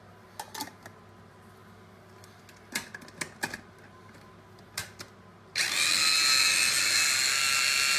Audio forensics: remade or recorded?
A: recorded